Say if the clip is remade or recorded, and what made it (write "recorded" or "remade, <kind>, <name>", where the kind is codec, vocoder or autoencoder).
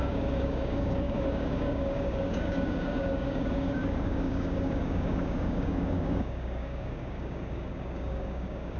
remade, codec, DAC